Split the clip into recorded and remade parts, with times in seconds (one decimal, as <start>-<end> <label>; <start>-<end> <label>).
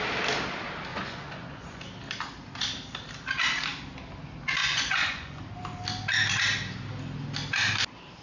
0.0-0.9 recorded; 0.9-1.8 remade; 1.8-4.6 recorded; 4.6-5.4 remade; 5.4-8.2 recorded